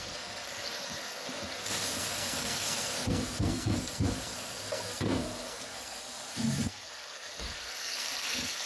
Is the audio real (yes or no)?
no